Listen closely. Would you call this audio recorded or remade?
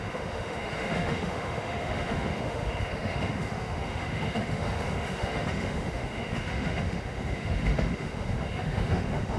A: remade